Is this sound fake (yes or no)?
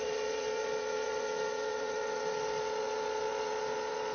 yes